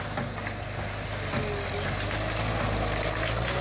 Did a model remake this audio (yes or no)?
no